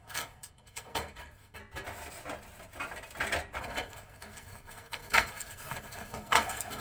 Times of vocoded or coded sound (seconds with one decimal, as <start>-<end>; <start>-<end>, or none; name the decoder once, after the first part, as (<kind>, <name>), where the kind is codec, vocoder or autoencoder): 0.0-1.6 (codec, SNAC); 3.6-6.8

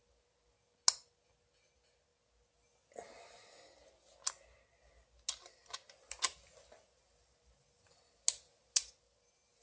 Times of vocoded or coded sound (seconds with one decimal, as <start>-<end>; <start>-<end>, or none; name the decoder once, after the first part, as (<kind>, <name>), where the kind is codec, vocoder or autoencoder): none